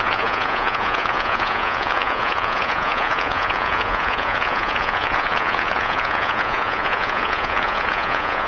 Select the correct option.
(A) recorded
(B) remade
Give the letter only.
B